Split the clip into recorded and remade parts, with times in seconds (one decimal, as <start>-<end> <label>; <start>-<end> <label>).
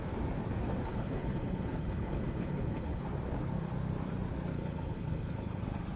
0.0-0.9 recorded; 0.9-3.0 remade; 3.0-4.5 recorded; 4.5-5.6 remade; 5.6-6.0 recorded